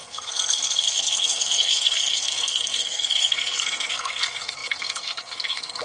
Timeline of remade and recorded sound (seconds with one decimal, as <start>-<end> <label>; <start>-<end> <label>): 0.0-5.8 remade